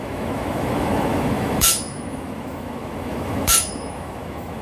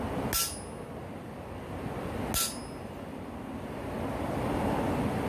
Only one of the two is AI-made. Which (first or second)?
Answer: first